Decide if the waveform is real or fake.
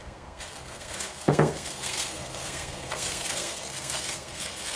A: fake